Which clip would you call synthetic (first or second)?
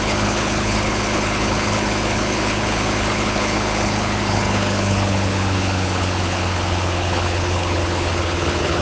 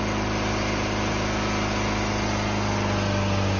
first